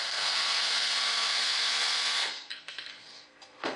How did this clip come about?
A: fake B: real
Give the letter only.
A